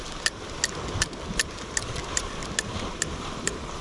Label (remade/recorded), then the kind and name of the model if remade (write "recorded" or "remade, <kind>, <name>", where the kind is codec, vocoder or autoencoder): recorded